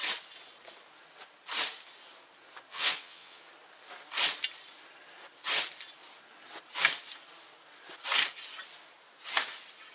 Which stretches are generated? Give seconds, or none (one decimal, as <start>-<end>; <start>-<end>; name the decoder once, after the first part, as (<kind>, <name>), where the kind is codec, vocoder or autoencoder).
2.7-3.4 (vocoder, WaveNeXt)